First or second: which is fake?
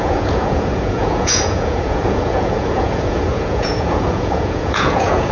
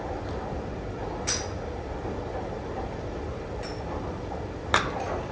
first